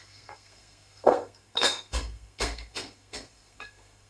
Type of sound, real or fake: fake